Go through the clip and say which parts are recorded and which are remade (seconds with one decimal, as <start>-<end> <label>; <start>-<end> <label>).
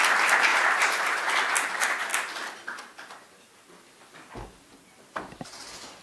0.0-0.5 recorded; 0.5-1.3 remade; 1.3-6.0 recorded